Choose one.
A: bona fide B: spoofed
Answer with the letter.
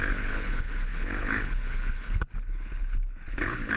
B